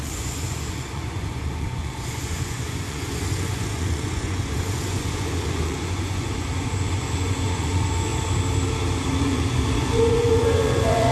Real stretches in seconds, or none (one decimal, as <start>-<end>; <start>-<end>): 8.1-9.2